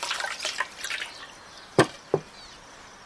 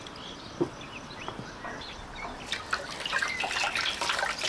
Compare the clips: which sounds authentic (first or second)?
first